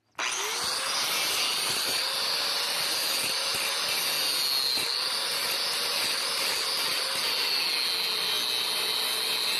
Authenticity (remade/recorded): recorded